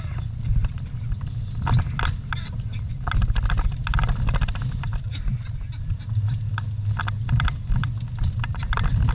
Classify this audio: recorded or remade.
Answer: recorded